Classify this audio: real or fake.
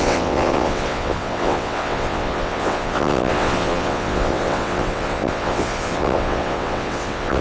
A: fake